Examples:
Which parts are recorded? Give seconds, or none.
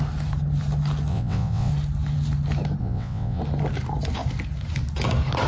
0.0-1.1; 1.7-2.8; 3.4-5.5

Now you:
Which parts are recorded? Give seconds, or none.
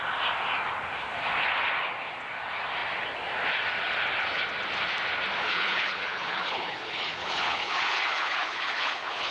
0.0-5.4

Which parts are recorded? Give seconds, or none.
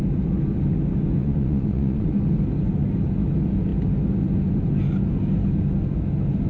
0.0-1.2; 2.1-6.5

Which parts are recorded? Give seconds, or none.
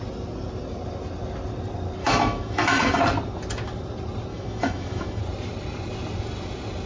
0.0-2.0; 3.0-4.3; 5.2-6.9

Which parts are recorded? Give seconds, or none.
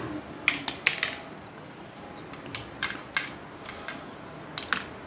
0.0-5.1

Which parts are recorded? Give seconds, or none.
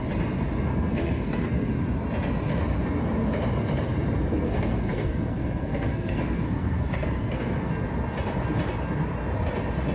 0.0-0.7; 1.7-4.3; 7.7-9.9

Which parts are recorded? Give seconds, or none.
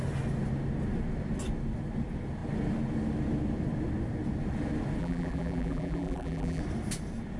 0.0-5.0; 6.6-7.4